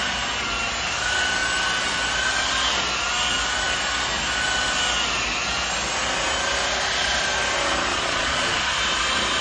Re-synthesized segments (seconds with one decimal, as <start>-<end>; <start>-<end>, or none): 7.9-8.7